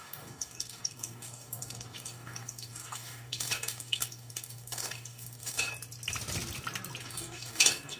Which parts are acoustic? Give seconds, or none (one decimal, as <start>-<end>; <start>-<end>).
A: 5.7-7.0